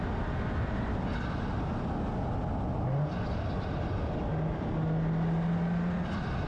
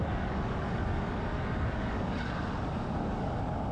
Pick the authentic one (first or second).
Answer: first